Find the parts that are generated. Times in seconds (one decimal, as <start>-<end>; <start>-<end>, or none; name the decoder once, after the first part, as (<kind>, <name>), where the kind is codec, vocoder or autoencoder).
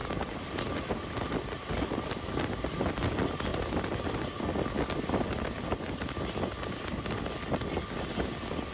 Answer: none